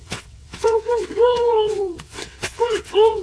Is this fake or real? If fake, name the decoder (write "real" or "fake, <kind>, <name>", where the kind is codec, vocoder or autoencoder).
fake, vocoder, WaveNeXt